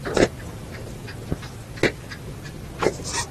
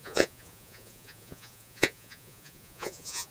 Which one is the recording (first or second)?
first